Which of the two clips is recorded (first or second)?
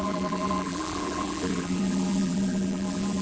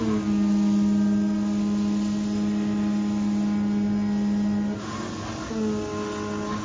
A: second